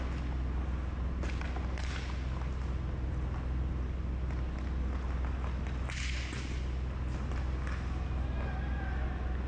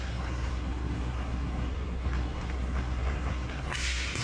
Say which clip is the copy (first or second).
second